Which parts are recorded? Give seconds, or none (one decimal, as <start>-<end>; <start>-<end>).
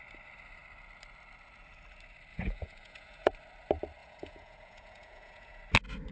0.0-2.3; 3.3-4.0; 5.6-6.1